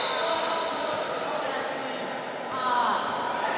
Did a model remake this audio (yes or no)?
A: no